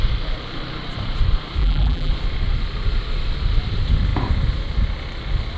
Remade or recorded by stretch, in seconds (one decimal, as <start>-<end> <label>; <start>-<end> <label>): 0.0-1.6 recorded; 1.6-2.1 remade; 2.1-5.6 recorded